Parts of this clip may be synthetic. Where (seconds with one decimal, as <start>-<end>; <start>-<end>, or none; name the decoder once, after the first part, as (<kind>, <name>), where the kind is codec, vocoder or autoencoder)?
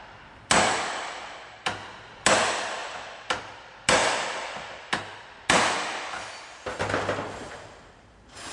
none